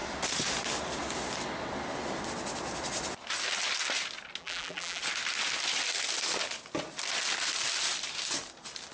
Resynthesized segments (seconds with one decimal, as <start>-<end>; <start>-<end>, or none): 4.4-5.0